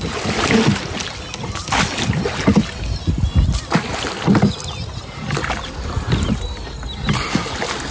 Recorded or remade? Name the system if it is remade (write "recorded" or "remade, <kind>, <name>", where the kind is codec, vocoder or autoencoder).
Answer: recorded